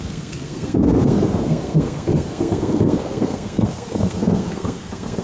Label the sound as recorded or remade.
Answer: remade